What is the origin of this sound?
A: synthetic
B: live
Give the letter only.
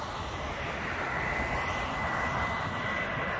B